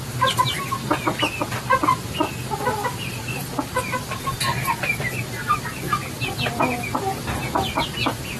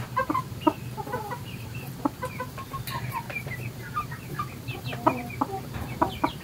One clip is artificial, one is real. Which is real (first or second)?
first